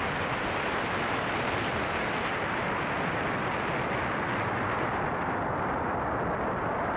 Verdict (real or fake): real